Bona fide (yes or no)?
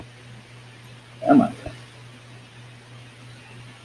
yes